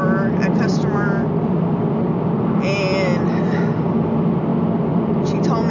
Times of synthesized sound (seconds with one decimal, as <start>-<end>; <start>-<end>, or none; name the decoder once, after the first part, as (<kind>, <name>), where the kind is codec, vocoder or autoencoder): none